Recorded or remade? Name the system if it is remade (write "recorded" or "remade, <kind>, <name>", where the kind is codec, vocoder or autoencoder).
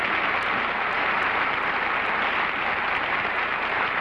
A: recorded